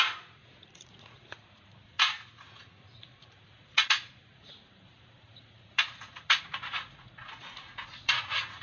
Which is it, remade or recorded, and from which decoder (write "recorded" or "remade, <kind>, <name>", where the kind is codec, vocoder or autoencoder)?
remade, vocoder, Vocos